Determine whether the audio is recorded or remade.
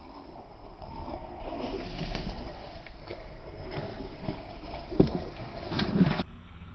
remade